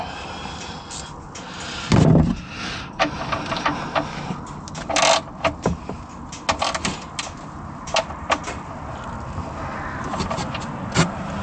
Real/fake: real